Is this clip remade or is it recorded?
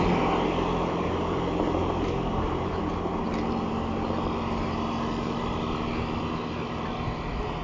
recorded